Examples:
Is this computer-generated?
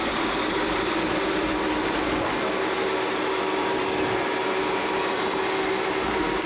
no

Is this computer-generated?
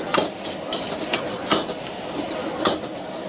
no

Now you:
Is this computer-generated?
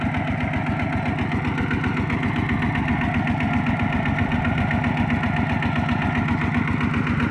no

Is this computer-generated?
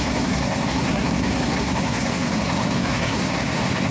yes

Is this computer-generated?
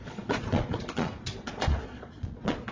yes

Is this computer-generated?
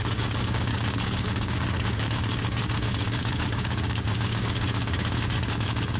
yes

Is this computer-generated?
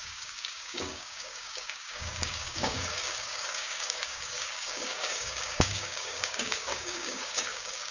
yes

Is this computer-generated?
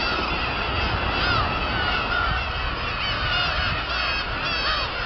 no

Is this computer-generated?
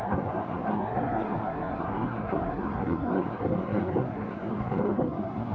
yes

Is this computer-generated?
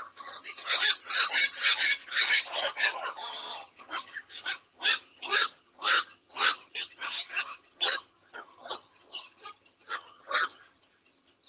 yes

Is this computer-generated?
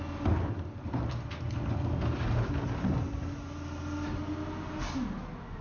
no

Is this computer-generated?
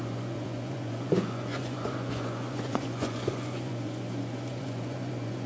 yes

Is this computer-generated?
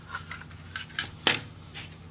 no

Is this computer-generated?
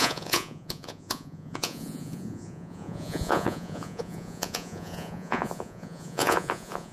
yes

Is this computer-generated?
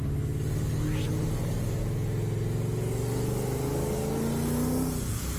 no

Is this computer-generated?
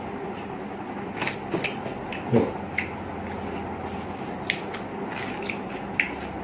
no